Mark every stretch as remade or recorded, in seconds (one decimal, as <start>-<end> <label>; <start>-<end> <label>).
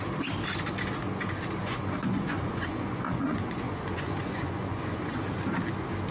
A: 0.0-1.6 recorded; 1.6-5.2 remade; 5.2-6.1 recorded